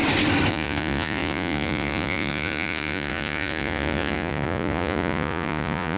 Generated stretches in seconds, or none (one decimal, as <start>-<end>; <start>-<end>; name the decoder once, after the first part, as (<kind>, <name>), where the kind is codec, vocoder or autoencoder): 0.5-6.0 (vocoder, Vocos)